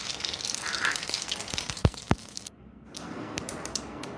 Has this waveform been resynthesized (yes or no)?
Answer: yes